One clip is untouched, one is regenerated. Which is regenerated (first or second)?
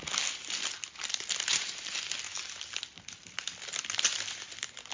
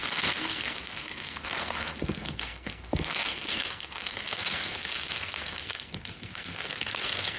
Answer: second